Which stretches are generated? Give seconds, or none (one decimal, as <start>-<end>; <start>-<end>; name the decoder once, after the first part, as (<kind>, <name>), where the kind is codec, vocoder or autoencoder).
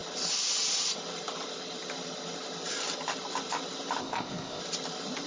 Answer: 4.0-4.6 (codec, ZipCodec)